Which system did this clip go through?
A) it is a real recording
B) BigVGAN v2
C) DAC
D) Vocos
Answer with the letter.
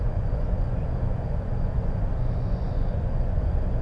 D